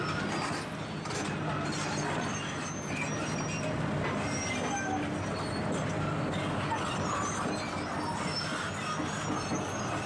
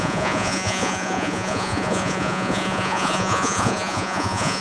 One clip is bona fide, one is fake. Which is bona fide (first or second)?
first